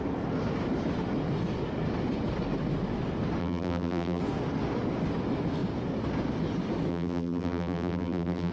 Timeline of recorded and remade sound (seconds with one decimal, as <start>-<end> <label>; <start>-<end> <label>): 0.0-3.4 recorded; 3.4-4.2 remade; 4.2-6.9 recorded; 6.9-8.5 remade